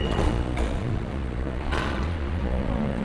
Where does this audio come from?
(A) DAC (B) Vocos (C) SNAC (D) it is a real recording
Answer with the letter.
B